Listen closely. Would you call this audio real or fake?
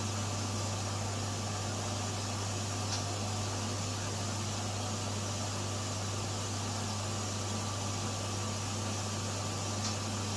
real